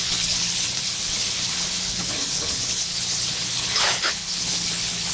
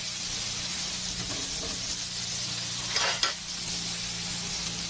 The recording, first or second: second